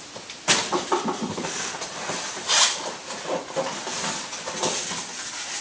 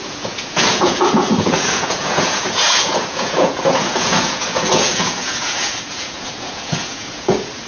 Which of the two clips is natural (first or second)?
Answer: first